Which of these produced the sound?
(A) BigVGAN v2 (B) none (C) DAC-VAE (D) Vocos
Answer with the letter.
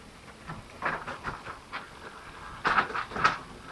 B